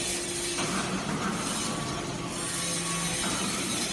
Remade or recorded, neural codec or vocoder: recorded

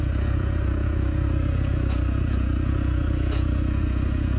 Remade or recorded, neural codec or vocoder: recorded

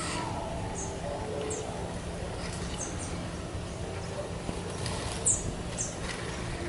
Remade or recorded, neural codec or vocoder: recorded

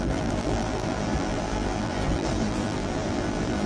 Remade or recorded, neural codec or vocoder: remade, vocoder, BigVGAN v2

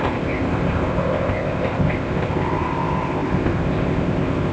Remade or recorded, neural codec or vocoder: remade, codec, ZipCodec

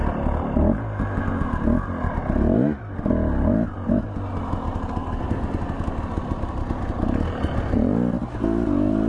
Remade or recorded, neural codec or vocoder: recorded